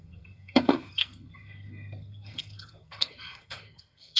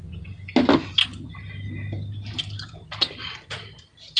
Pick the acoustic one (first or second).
second